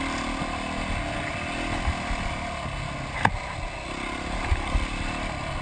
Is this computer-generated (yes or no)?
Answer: no